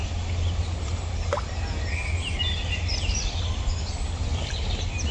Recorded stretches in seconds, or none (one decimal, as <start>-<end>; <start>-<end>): 0.0-5.1